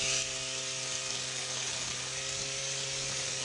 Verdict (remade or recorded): remade